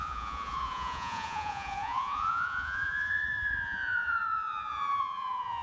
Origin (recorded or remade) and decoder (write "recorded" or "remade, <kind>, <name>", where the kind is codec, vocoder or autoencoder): remade, vocoder, Vocos